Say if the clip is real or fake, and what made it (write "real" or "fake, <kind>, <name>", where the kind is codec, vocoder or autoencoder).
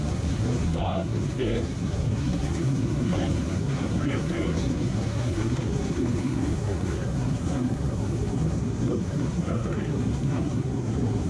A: fake, codec, SNAC